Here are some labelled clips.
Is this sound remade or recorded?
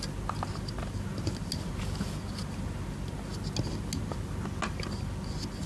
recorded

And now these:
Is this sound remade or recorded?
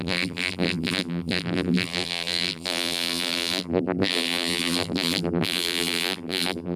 remade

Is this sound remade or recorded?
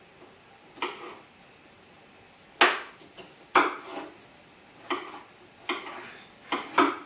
recorded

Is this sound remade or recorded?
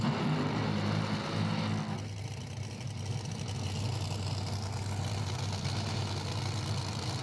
recorded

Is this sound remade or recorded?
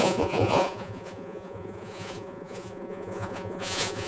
remade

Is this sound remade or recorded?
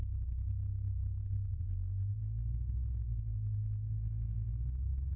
remade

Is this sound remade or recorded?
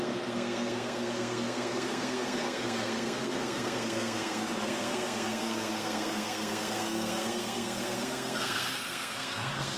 remade